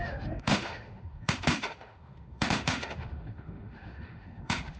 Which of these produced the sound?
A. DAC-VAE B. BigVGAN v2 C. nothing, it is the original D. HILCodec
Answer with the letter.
A